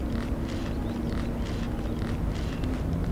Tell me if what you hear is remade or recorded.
recorded